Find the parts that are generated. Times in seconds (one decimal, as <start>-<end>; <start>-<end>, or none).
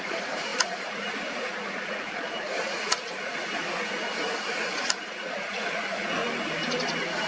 0.0-6.2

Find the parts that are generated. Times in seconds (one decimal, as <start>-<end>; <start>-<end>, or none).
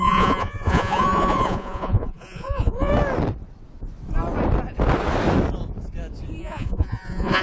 0.0-2.9; 6.4-7.4